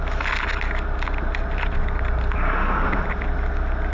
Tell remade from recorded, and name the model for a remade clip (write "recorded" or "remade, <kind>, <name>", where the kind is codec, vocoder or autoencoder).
recorded